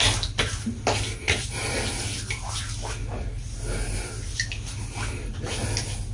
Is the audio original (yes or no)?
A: yes